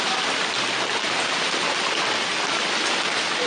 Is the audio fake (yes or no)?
no